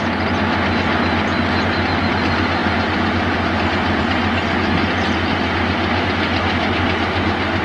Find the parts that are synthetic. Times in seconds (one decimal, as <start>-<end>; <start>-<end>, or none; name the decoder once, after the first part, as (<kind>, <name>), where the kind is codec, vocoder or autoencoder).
none